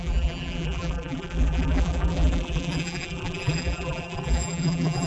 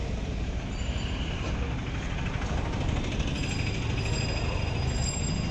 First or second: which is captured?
second